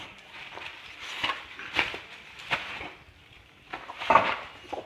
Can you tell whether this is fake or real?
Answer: real